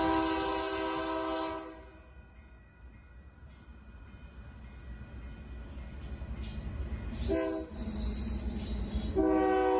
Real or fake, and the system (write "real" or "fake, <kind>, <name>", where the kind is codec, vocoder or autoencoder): real